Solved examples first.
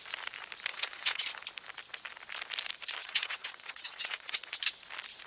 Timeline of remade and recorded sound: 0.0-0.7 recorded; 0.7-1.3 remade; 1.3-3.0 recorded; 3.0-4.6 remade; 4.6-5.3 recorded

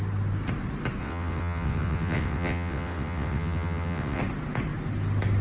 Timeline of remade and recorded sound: 0.0-1.0 recorded; 1.0-4.2 remade; 4.2-5.4 recorded

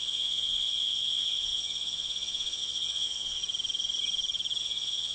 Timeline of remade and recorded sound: 0.0-3.4 remade; 3.4-4.6 recorded; 4.6-5.1 remade

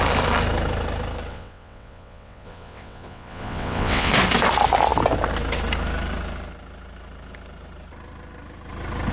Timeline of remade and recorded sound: 0.0-1.3 recorded; 1.3-4.1 remade; 4.1-9.1 recorded